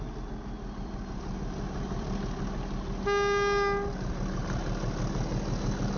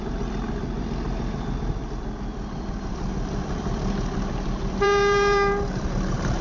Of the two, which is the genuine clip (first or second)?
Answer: first